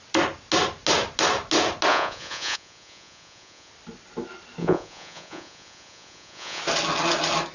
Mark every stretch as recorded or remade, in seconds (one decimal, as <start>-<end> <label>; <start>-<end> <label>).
0.0-1.9 recorded; 1.9-3.7 remade; 3.7-4.6 recorded; 4.6-6.6 remade; 6.6-7.5 recorded